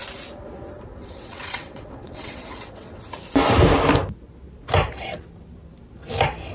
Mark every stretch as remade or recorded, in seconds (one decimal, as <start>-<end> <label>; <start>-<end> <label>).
0.0-0.9 recorded; 0.9-3.0 remade; 3.0-6.5 recorded